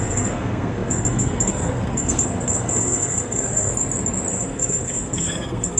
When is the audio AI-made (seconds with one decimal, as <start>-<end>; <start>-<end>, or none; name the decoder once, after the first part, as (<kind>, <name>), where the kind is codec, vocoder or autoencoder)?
0.0-3.7 (codec, SNAC); 4.3-5.8